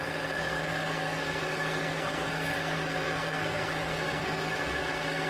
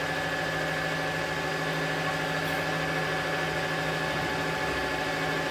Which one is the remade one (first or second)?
first